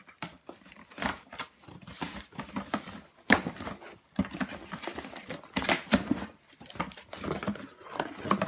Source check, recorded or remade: remade